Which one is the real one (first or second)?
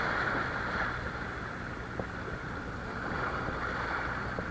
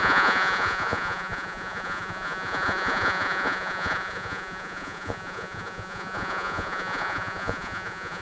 first